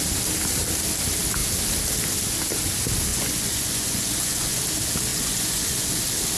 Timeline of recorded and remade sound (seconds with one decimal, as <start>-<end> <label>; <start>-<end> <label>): 0.0-3.1 recorded; 3.1-4.6 remade; 4.6-5.1 recorded; 5.1-6.0 remade; 6.0-6.4 recorded